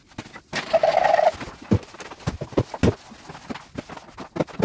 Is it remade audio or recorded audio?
recorded